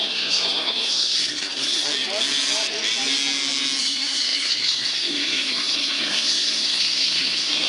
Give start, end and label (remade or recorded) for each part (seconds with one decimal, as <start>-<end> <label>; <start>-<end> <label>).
0.0-1.9 remade; 1.9-3.8 recorded; 3.8-7.7 remade